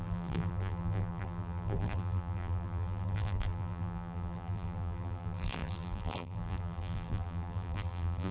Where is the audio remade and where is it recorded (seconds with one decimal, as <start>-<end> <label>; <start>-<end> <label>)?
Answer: 0.0-8.3 remade